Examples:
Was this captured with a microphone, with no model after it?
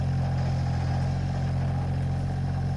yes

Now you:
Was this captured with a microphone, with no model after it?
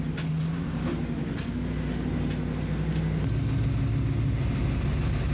yes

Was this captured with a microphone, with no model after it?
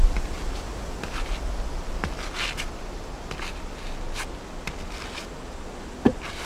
yes